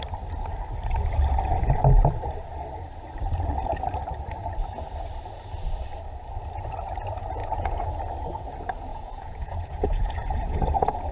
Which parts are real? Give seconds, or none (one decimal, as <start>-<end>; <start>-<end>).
0.0-7.4; 7.9-8.9